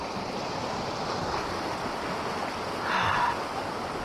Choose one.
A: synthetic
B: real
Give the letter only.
B